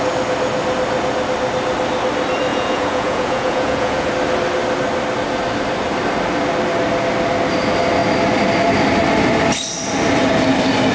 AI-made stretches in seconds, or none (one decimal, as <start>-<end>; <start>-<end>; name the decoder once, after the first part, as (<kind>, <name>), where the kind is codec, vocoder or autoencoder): 2.5-4.1 (vocoder, Vocos)